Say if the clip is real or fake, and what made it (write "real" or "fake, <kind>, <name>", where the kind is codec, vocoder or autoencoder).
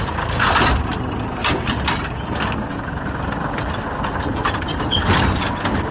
real